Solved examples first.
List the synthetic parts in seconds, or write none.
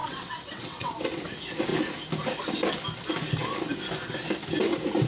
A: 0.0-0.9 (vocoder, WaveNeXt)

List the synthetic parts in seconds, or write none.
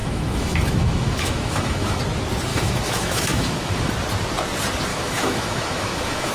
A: 0.0-2.0 (autoencoder, DAC-VAE); 2.5-3.9; 4.9-6.3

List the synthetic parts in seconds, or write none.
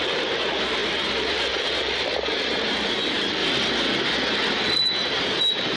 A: 0.0-3.4 (vocoder, BigVGAN v2); 4.8-5.8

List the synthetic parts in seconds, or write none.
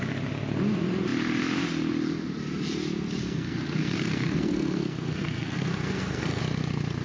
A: 3.2-6.4 (codec, SNAC)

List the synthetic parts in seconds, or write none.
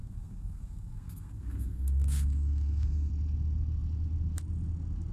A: 0.0-3.1 (codec, SNAC)